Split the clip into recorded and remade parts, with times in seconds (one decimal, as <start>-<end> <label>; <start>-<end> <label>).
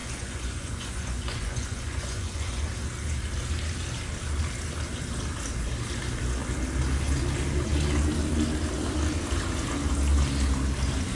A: 0.0-2.7 remade; 2.7-11.1 recorded